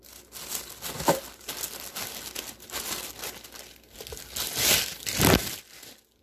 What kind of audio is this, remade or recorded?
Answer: recorded